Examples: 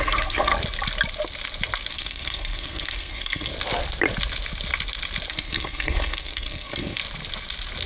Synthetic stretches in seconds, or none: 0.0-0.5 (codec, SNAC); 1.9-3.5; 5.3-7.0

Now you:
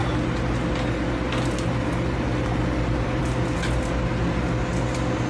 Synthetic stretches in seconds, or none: none